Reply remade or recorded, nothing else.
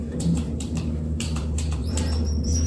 remade